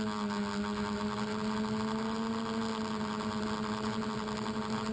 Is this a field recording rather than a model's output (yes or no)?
yes